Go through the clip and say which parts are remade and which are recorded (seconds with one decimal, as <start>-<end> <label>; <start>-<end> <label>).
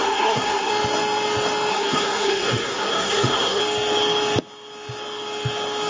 0.0-0.7 remade; 0.7-1.7 recorded; 1.7-3.6 remade; 3.6-5.9 recorded